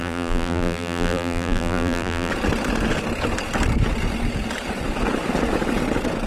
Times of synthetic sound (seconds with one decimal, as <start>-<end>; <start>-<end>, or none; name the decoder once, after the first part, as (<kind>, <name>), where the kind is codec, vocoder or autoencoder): 0.0-2.3 (vocoder, BigVGAN v2)